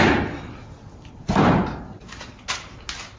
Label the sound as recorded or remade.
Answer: recorded